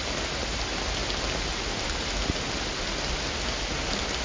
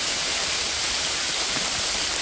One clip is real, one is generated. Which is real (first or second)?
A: first